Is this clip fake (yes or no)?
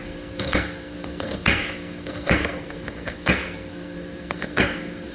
yes